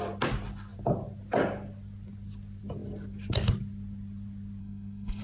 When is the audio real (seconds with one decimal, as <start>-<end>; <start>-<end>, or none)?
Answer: 0.0-4.6